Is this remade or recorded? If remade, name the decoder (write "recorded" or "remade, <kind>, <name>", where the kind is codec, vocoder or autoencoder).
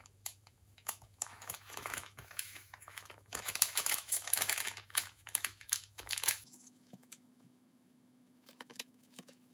remade, autoencoder, DAC-VAE